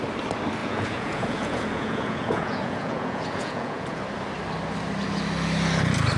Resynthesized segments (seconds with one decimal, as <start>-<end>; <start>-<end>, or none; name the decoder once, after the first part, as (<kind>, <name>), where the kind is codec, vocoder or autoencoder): 0.6-4.0 (vocoder, Vocos)